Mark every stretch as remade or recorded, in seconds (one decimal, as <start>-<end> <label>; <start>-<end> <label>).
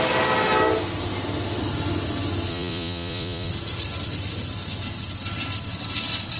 0.0-2.5 recorded; 2.5-3.5 remade; 3.5-6.4 recorded